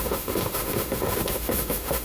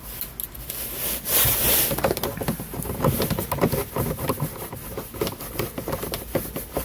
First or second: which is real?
second